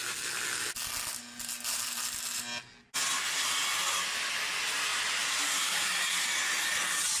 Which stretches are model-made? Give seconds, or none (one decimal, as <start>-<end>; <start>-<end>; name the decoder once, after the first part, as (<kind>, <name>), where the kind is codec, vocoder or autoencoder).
4.9-5.8 (vocoder, BigVGAN v2)